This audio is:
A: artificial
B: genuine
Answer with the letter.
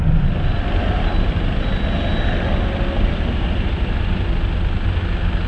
B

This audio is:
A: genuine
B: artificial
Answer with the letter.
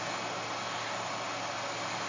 A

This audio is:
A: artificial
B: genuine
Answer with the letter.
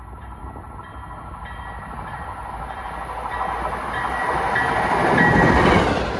B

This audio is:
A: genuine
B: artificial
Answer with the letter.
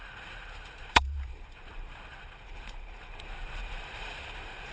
B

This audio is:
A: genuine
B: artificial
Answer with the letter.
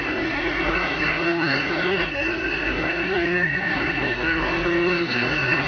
B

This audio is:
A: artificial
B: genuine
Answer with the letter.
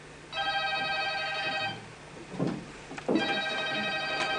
B